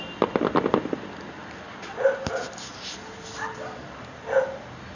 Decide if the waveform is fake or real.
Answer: real